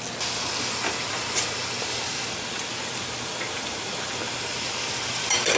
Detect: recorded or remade recorded